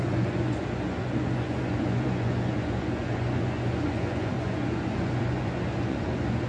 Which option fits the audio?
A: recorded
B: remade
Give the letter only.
B